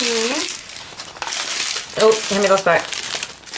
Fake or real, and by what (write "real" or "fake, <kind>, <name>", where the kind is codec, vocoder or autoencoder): real